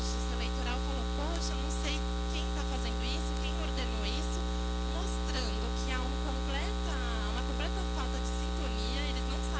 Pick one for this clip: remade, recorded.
recorded